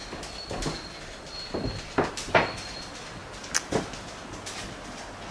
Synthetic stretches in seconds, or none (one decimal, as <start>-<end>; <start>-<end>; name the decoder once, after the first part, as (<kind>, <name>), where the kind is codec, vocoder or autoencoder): none